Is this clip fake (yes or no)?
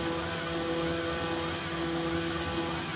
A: no